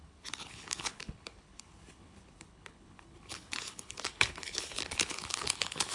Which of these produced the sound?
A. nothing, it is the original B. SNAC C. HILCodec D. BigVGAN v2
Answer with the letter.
C